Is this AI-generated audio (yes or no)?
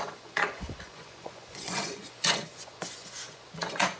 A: yes